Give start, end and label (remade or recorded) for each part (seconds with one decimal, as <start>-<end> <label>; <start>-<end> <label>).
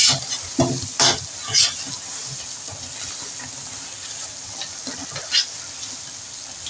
0.0-6.7 recorded